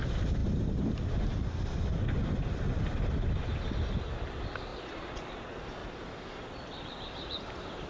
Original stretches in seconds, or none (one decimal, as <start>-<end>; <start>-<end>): 0.0-0.4; 1.1-5.8; 7.4-7.9

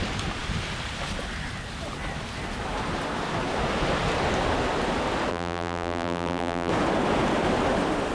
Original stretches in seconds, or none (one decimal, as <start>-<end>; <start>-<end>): 0.0-5.3; 6.7-8.1

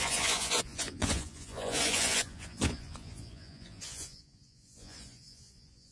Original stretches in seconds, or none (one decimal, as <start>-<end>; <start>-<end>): none

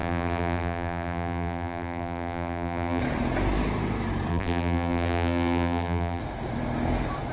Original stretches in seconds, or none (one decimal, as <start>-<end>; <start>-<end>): 3.0-4.3; 6.2-7.3

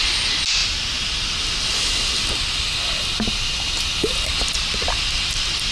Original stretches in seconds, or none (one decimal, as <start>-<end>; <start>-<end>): 0.0-5.7

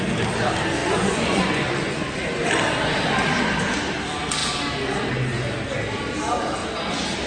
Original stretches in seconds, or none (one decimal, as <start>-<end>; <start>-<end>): 0.0-0.8; 2.2-7.3

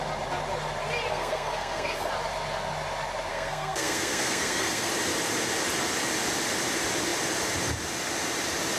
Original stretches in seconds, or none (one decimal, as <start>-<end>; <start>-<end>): 0.0-1.1; 2.1-3.3; 4.9-8.8